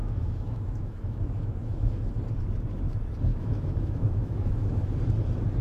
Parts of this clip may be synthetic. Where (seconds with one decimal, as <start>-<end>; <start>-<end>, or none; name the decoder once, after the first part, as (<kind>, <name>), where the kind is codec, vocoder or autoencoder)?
0.0-2.1 (autoencoder, DAC-VAE); 3.3-5.0